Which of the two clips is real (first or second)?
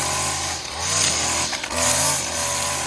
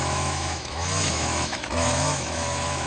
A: first